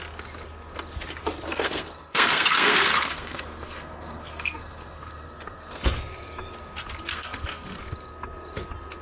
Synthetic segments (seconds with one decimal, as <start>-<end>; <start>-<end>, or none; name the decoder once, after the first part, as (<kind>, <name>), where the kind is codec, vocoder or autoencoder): 1.5-5.8 (codec, SNAC); 7.1-7.8